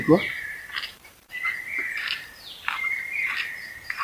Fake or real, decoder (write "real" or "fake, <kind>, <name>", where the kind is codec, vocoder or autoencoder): fake, vocoder, BigVGAN v2